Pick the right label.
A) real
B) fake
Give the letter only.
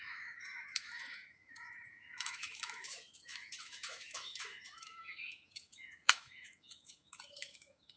B